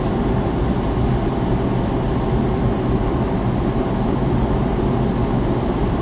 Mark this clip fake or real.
real